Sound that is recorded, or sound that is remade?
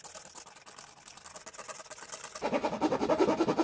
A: recorded